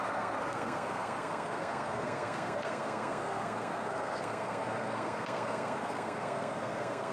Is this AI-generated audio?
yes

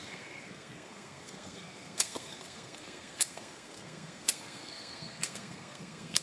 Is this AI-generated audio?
yes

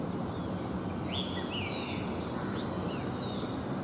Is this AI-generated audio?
no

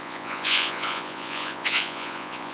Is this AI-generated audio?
yes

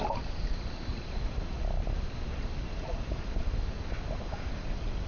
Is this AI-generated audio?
no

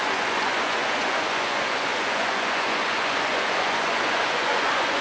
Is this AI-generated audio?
yes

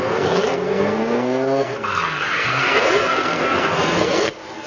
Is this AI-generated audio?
yes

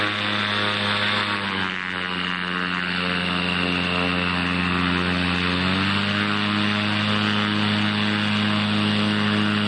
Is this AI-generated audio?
no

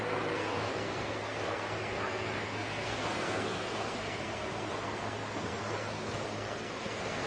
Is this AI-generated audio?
yes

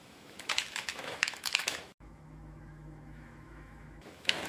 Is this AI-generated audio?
yes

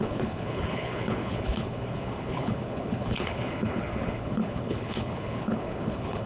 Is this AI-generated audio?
yes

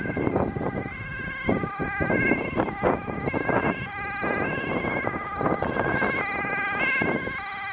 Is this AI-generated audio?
no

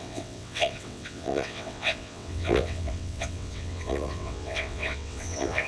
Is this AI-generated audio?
yes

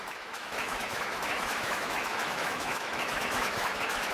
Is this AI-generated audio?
yes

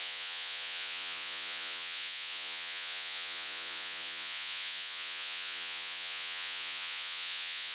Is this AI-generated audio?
yes